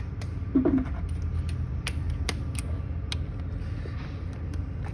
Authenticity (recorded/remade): recorded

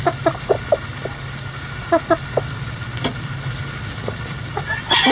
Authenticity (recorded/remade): recorded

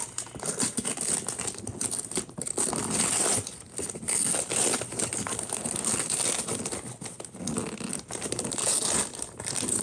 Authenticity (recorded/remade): recorded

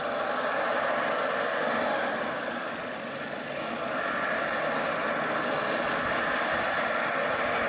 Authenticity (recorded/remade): recorded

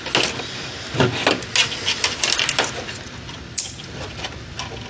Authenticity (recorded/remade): recorded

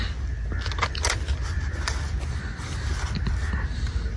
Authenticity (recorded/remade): recorded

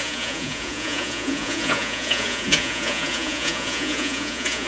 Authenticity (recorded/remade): remade